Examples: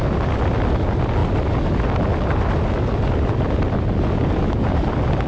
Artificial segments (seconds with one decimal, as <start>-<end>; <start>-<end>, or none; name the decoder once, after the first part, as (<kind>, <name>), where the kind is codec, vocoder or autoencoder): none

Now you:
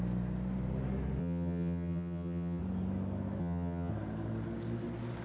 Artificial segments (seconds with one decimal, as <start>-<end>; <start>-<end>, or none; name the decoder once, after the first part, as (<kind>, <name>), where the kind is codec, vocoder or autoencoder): 1.2-2.6 (vocoder, HiFi-GAN); 3.4-3.9

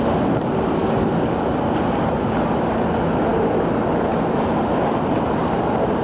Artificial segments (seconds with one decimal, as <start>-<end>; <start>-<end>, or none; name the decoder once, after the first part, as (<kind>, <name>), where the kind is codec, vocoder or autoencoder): none